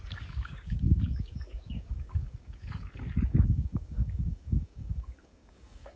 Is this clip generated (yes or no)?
yes